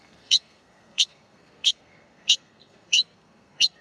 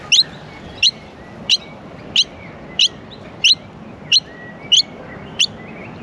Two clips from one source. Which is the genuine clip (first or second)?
second